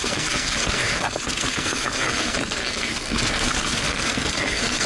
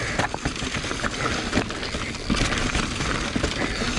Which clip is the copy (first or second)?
first